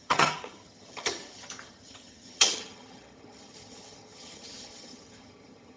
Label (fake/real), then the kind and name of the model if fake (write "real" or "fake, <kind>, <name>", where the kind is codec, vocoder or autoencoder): fake, vocoder, HiFi-GAN